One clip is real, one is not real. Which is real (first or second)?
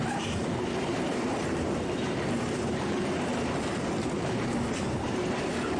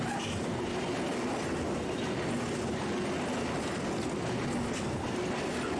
second